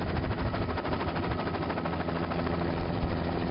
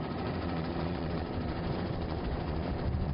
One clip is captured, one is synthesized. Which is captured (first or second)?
first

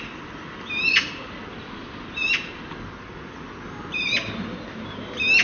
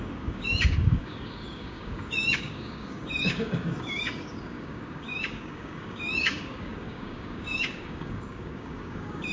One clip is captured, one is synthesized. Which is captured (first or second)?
first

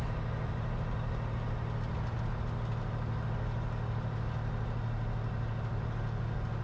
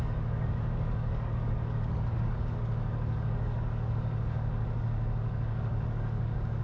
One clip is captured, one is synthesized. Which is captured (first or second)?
first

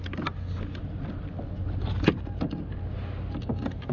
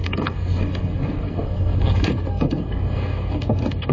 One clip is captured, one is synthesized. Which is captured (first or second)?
first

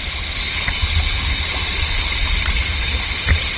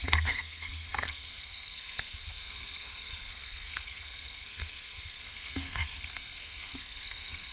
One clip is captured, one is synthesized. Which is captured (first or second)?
first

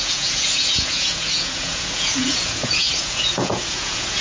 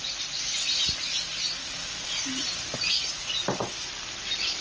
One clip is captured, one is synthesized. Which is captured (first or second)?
second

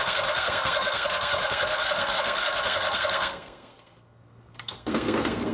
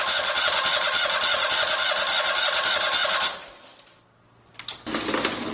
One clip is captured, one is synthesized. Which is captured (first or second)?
second